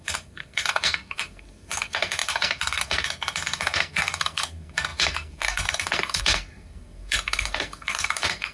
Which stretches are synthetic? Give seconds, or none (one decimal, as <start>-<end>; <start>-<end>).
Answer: 0.0-8.5